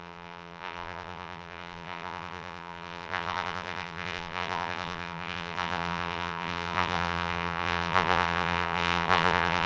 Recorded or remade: remade